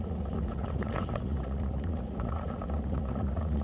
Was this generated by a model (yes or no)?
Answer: yes